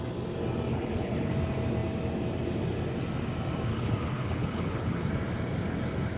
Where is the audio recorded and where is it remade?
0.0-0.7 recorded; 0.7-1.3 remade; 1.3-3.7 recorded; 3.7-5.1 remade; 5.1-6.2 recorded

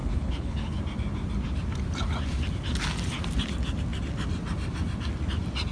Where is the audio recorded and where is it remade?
0.0-0.8 remade; 0.8-5.7 recorded

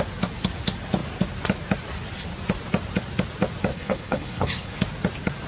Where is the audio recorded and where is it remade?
0.0-3.7 recorded; 3.7-4.8 remade; 4.8-5.5 recorded

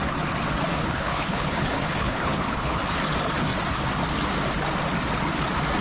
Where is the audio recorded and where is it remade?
0.0-0.8 recorded; 0.8-2.8 remade; 2.8-5.8 recorded

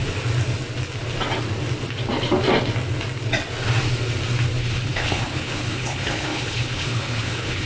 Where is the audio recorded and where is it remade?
0.0-4.6 recorded; 4.6-7.7 remade

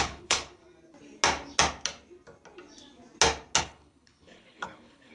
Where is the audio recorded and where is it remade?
0.0-0.6 remade; 0.6-3.6 recorded; 3.6-5.1 remade